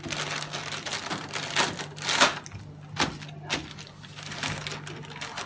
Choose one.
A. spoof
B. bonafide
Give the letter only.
B